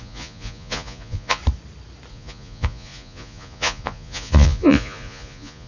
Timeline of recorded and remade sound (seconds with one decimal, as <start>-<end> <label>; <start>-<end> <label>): 0.0-1.4 remade; 1.4-2.1 recorded; 2.1-5.7 remade